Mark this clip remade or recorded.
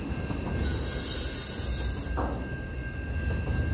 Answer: recorded